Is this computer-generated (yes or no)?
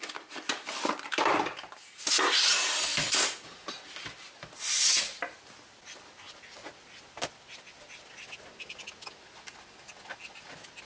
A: no